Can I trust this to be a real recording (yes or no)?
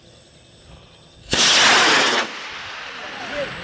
yes